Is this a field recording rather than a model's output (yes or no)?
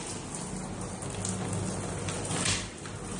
yes